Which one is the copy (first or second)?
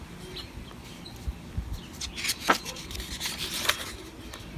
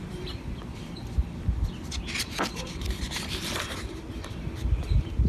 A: second